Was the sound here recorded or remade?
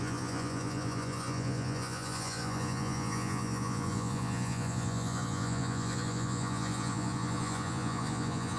remade